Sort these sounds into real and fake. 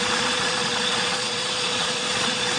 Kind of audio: fake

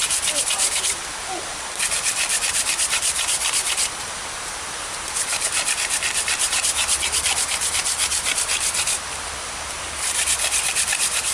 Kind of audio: fake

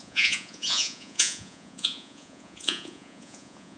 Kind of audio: fake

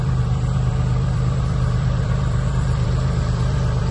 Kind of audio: fake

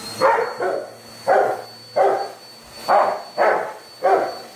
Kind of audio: real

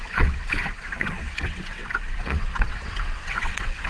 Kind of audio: fake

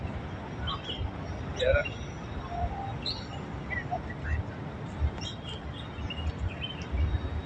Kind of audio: real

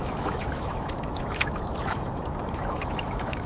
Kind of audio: fake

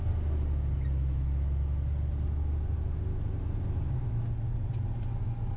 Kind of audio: real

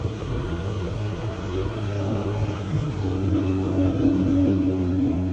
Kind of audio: fake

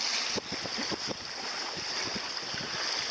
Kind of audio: real